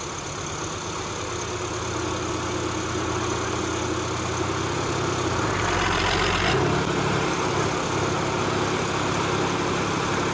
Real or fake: real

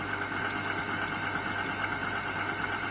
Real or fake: real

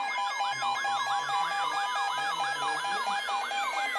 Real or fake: real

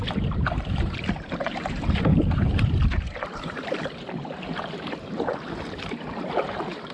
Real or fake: fake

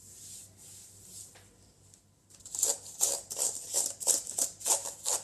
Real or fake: real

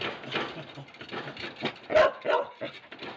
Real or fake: real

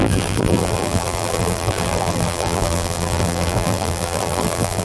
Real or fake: fake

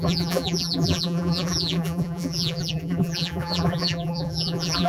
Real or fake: fake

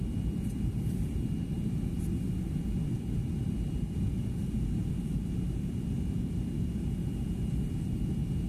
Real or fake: fake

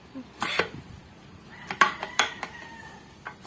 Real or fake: fake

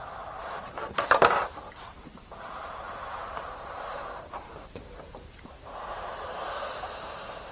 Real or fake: fake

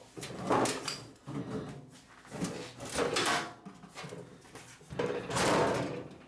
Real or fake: real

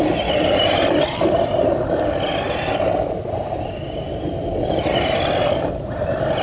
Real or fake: real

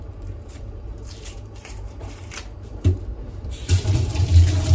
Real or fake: fake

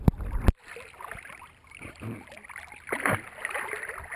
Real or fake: real